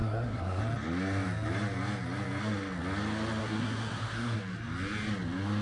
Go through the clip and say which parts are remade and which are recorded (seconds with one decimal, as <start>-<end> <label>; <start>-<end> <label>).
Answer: 0.0-0.6 remade; 0.6-3.4 recorded; 3.4-4.4 remade; 4.4-5.6 recorded